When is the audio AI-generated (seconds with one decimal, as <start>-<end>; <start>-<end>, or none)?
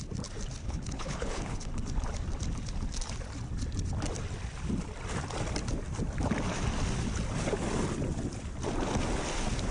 0.6-1.6